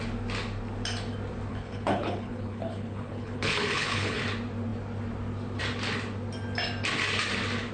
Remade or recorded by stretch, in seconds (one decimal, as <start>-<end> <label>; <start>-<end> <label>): 0.0-1.5 recorded; 1.5-4.2 remade; 4.2-7.7 recorded